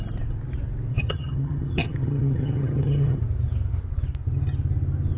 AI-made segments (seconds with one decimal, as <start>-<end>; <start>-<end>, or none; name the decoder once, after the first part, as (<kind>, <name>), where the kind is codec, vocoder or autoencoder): 0.9-3.2 (vocoder, HiFi-GAN)